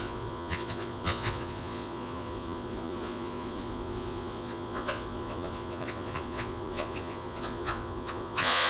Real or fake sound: fake